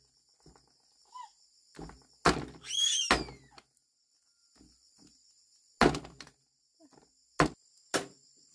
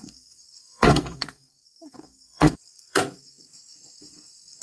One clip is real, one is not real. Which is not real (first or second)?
second